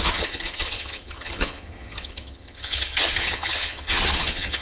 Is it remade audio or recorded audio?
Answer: remade